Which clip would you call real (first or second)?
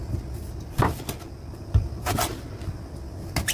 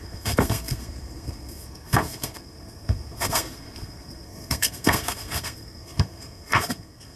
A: first